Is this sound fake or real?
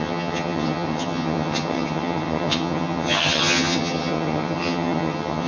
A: fake